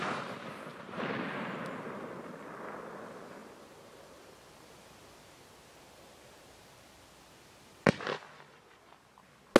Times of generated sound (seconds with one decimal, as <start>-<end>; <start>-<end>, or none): 0.7-2.4; 3.4-4.7